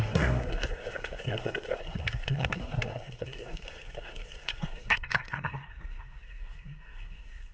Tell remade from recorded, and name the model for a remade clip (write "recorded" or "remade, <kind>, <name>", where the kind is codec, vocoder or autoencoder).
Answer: remade, codec, SNAC